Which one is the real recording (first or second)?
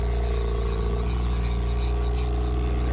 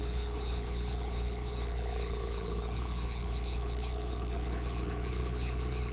first